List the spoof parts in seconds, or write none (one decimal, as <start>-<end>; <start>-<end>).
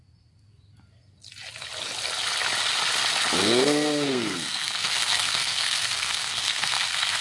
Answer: 3.4-7.2